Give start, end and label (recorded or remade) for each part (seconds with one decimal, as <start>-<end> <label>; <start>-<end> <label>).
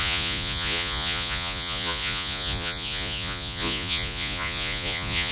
0.0-5.3 remade